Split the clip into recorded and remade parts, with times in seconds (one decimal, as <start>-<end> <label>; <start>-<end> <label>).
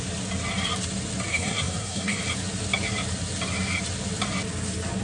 0.0-1.3 recorded; 1.3-2.2 remade; 2.2-5.0 recorded